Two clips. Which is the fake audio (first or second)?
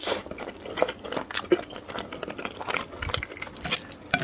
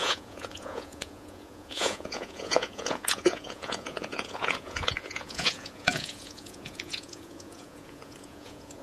second